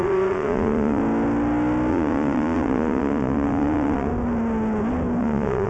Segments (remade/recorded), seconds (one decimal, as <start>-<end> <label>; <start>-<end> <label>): 0.0-1.0 remade; 1.0-1.9 recorded; 1.9-4.1 remade; 4.1-5.2 recorded; 5.2-5.7 remade